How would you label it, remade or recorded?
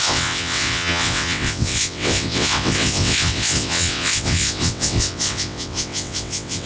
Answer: remade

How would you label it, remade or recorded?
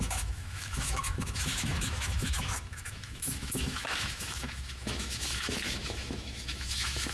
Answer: remade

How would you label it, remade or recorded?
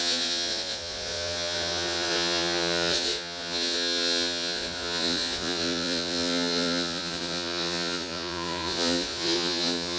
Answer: remade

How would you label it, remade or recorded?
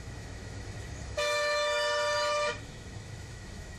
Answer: remade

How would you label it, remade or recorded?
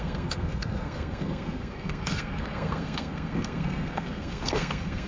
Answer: remade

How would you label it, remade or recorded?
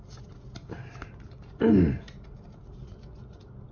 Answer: recorded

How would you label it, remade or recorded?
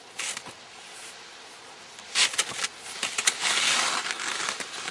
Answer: recorded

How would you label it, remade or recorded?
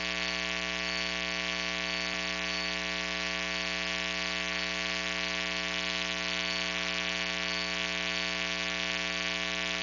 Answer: recorded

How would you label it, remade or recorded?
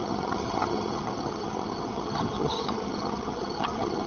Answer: remade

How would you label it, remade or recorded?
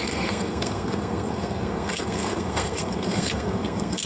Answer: remade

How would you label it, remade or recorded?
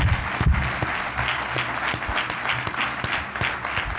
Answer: recorded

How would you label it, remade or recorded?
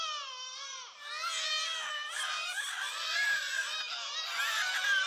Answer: recorded